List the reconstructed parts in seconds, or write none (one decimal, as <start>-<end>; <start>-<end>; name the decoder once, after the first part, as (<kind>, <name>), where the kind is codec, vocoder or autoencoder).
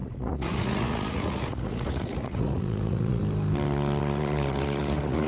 0.0-3.2 (vocoder, Vocos); 4.0-5.3